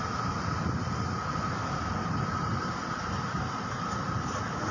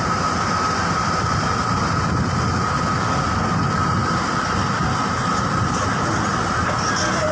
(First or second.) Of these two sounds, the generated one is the first